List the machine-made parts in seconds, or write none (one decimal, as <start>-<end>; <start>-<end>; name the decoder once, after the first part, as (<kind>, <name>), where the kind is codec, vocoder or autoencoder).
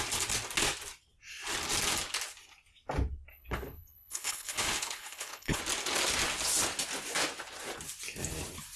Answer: 3.3-5.6 (codec, HILCodec)